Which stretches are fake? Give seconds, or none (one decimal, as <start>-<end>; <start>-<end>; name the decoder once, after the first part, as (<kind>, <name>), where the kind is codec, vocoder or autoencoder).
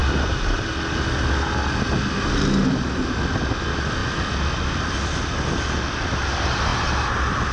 0.0-0.7 (vocoder, BigVGAN v2)